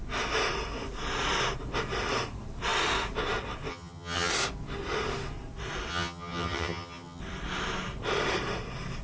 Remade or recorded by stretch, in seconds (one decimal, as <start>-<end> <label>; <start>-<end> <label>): 0.0-3.7 recorded; 3.7-4.3 remade; 4.3-5.9 recorded; 5.9-7.2 remade; 7.2-9.0 recorded